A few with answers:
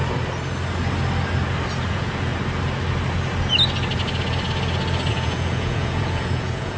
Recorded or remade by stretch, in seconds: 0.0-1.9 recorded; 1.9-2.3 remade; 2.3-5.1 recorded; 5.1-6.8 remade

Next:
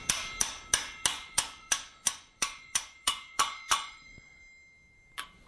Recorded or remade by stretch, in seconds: 0.0-1.1 recorded; 1.1-4.4 remade; 4.4-5.5 recorded

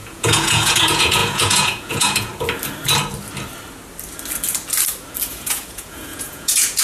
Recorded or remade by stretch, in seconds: 0.0-2.3 remade; 2.3-5.3 recorded; 5.3-6.8 remade